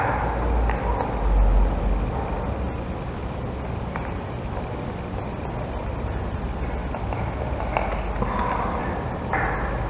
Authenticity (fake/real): real